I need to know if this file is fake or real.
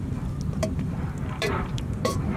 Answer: fake